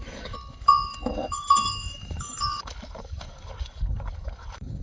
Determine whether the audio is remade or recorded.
remade